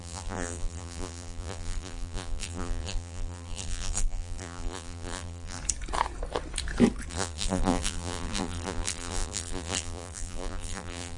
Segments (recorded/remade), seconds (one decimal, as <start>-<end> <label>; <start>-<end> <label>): 0.0-5.6 remade; 5.6-7.1 recorded; 7.1-11.2 remade